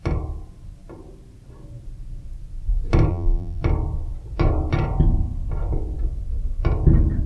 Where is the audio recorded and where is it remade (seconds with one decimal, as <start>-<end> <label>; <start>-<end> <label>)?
0.0-3.1 recorded; 3.1-3.6 remade; 3.6-7.3 recorded